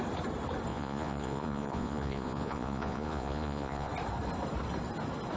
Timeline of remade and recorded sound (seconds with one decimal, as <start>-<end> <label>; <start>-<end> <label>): 0.0-0.7 recorded; 0.7-3.9 remade; 3.9-5.4 recorded